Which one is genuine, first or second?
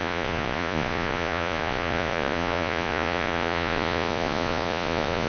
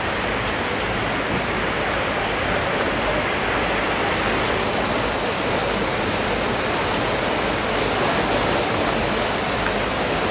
second